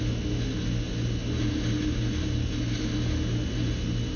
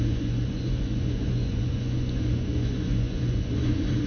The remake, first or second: second